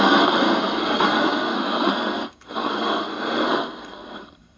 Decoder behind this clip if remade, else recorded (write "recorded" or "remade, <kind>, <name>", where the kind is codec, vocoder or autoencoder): remade, codec, SNAC